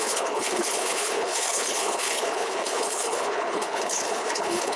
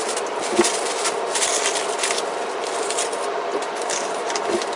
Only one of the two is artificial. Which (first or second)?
first